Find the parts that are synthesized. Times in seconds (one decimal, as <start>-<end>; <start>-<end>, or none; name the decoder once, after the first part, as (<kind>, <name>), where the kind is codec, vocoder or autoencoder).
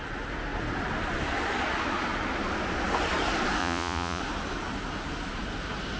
3.6-4.2 (vocoder, Vocos)